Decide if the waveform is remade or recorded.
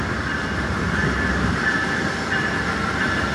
recorded